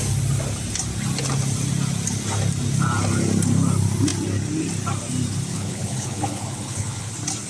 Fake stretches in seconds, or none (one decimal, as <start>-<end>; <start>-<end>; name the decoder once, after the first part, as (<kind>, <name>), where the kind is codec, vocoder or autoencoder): 5.5-7.1 (codec, HILCodec)